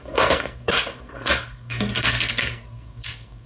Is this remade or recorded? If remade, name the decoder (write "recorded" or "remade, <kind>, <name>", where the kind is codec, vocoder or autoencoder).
remade, codec, SNAC